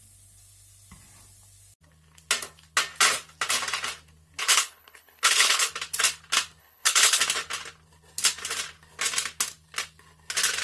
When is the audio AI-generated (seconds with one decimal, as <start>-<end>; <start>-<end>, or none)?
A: 4.4-5.7; 6.6-7.2